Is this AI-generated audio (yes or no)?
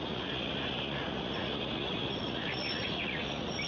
yes